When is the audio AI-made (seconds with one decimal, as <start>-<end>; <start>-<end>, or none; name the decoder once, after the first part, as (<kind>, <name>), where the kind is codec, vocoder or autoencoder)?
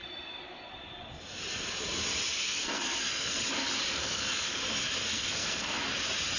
2.4-3.4 (codec, SNAC); 3.9-4.6; 5.0-5.8